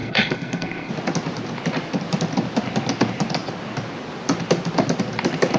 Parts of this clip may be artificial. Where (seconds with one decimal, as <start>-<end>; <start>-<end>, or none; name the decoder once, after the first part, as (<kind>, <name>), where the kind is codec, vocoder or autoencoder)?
0.0-0.9 (codec, SNAC)